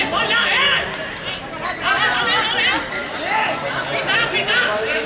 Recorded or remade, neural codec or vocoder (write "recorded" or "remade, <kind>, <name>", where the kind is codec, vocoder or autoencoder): recorded